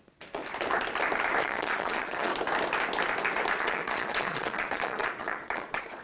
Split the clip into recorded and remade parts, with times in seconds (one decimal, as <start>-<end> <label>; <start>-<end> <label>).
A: 0.0-0.4 remade; 0.4-1.4 recorded; 1.4-2.3 remade; 2.3-3.6 recorded; 3.6-6.0 remade